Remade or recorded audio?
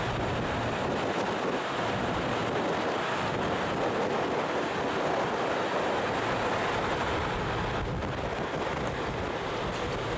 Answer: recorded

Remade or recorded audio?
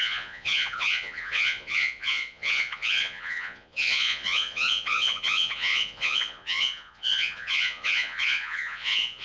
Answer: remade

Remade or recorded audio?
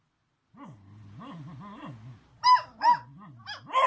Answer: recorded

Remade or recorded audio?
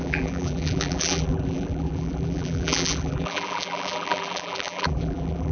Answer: remade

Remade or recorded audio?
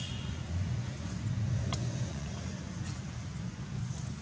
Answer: remade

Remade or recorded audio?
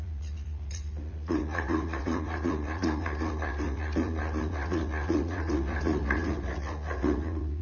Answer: remade